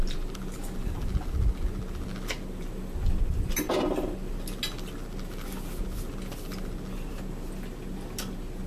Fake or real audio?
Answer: real